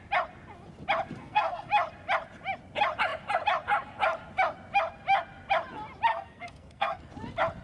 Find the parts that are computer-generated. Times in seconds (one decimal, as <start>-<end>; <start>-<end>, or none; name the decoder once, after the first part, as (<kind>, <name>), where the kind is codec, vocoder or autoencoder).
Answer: 1.2-1.7 (codec, SNAC); 6.1-7.1